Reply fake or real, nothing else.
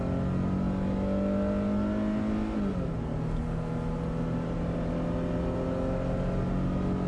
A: real